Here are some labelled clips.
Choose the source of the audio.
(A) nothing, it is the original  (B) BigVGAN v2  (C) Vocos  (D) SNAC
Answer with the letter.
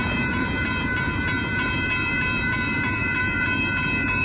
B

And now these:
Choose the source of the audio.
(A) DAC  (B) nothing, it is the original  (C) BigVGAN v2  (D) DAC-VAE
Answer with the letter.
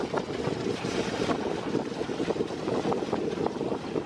C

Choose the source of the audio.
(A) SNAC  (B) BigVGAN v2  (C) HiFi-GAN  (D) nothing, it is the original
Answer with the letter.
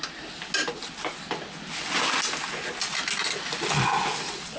D